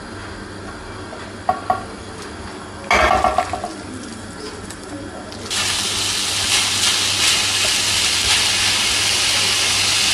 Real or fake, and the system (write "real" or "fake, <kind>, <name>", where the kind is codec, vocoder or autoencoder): real